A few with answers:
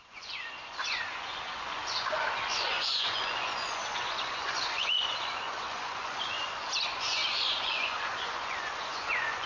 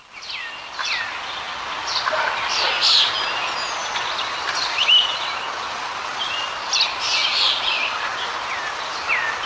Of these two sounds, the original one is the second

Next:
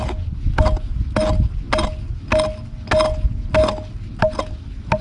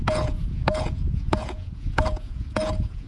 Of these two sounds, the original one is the first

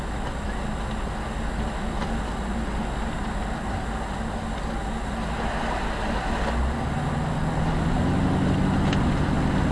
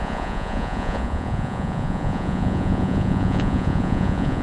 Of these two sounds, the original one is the first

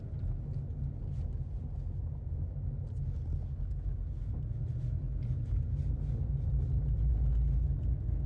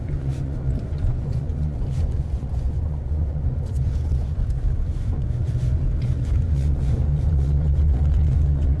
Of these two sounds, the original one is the first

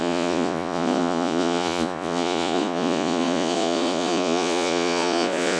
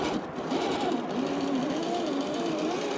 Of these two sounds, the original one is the second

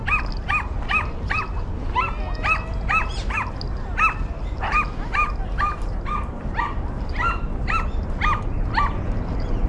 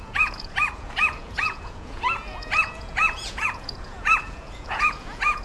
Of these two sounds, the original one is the first